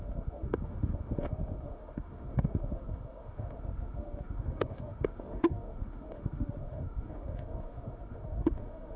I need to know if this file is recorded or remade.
remade